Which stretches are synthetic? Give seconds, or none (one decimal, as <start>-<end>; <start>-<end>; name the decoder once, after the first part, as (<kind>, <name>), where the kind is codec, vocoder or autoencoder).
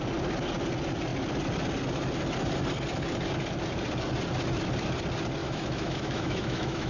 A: 5.4-6.9 (autoencoder, DAC-VAE)